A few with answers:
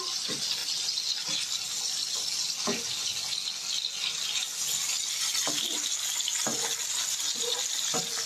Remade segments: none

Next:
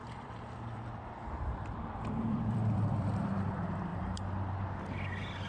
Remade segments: 0.0-3.3 (vocoder, BigVGAN v2); 3.9-4.6

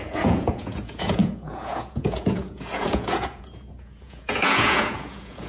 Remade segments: 0.0-5.5 (vocoder, Vocos)

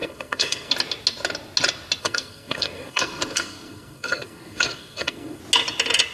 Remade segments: 0.0-0.7 (codec, SNAC); 2.0-5.4